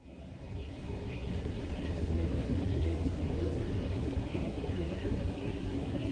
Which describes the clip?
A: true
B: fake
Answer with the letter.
B